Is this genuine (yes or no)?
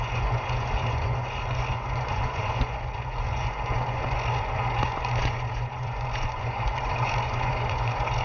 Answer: no